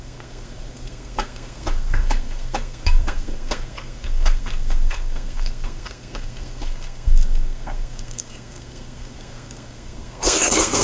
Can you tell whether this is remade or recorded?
remade